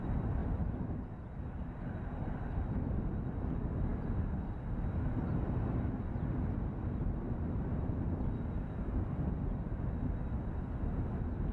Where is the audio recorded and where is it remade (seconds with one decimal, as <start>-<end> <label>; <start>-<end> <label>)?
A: 0.0-0.4 recorded; 0.4-1.1 remade; 1.1-11.5 recorded